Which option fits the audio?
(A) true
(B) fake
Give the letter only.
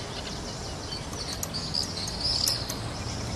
A